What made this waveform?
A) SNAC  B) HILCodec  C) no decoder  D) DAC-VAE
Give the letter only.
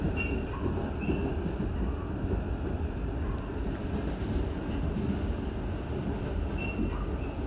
C